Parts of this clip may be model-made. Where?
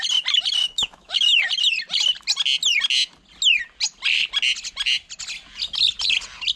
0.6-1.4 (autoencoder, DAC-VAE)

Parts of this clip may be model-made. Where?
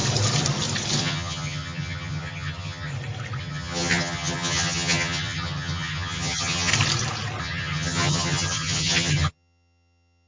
1.0-2.9 (vocoder, HiFi-GAN); 3.4-6.7; 7.4-10.3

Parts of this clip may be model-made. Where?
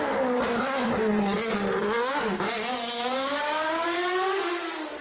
3.0-4.4 (codec, DAC)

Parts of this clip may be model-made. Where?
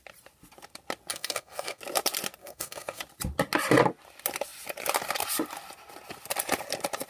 1.1-1.8 (codec, SNAC); 2.4-3.0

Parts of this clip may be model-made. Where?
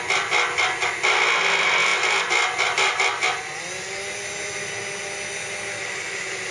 none